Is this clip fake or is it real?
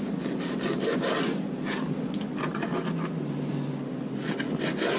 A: real